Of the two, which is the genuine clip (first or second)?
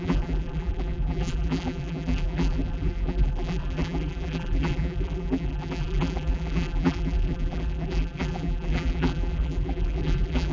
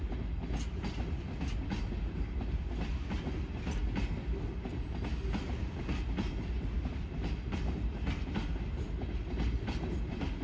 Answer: second